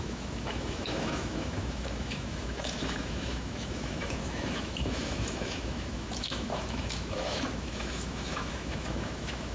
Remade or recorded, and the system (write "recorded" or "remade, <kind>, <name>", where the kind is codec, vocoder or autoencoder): remade, autoencoder, DAC-VAE